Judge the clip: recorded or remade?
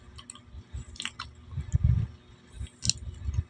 recorded